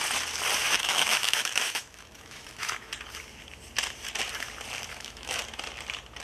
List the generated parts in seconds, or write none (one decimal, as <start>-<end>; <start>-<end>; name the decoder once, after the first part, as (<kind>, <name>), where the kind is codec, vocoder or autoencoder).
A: 0.6-2.9 (autoencoder, DAC-VAE); 4.9-5.4

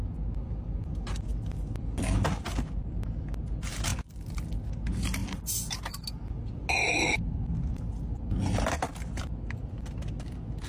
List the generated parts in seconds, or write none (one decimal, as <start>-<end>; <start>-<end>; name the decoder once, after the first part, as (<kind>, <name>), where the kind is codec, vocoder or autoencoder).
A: none

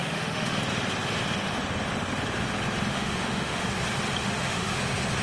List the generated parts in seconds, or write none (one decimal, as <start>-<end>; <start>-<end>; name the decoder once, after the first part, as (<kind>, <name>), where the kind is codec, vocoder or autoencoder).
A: 0.0-0.6 (autoencoder, DAC-VAE); 2.9-3.7; 4.2-4.8

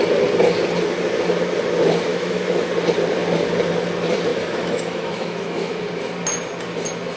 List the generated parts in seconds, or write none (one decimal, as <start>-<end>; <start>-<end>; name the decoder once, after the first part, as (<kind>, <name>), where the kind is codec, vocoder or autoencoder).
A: 2.1-2.7 (autoencoder, DAC-VAE); 4.3-5.8

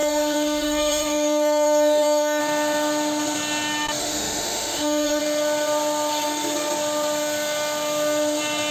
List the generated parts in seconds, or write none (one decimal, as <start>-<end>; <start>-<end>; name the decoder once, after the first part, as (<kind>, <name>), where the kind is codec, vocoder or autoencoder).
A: 0.0-2.4 (autoencoder, DAC-VAE); 4.0-5.2

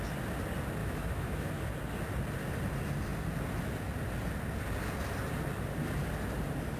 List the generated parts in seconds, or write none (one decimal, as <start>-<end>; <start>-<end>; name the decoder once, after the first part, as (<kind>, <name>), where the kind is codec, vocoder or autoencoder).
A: 0.8-1.5 (autoencoder, DAC-VAE)

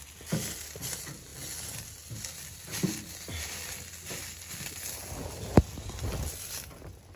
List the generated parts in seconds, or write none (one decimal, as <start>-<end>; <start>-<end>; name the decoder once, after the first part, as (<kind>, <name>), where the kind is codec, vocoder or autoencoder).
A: none